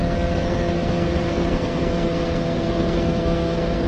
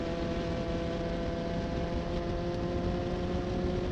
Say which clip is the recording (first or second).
second